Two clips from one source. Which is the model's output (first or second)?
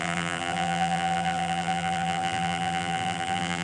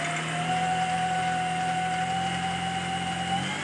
first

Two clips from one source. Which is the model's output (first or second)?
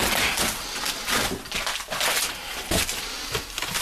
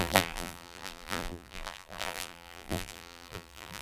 second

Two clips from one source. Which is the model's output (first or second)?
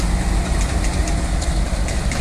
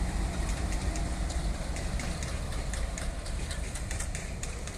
second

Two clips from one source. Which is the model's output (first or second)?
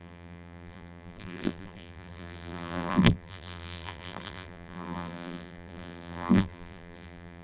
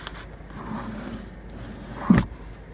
first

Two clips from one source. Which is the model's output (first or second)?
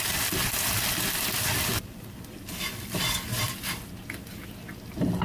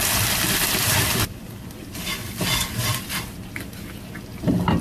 second